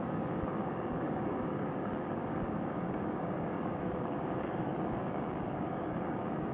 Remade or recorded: remade